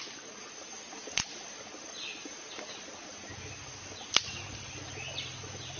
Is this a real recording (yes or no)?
yes